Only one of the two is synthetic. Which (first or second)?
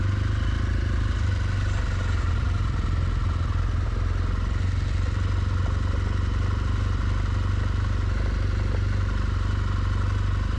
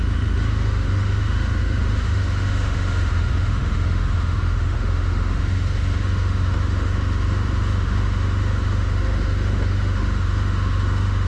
second